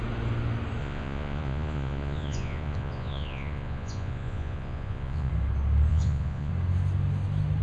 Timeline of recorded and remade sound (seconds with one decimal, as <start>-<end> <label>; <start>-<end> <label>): 0.0-0.8 recorded; 0.8-5.3 remade; 5.3-5.9 recorded; 5.9-6.5 remade; 6.5-7.6 recorded